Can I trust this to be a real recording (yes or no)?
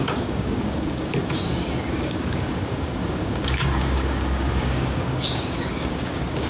no